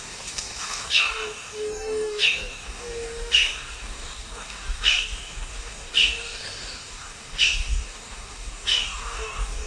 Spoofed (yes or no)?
yes